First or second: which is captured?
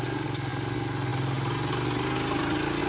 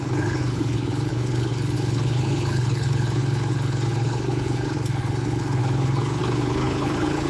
first